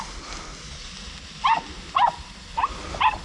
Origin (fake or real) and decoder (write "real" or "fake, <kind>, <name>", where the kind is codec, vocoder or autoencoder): real